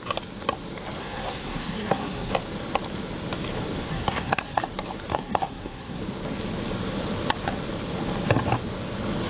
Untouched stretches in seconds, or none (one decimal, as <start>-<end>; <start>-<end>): 0.0-1.0; 2.3-3.9; 4.6-5.1; 6.0-9.3